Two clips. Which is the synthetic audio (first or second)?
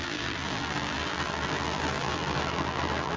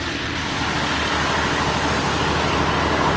first